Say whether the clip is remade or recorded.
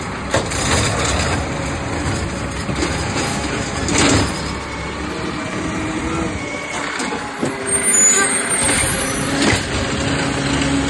recorded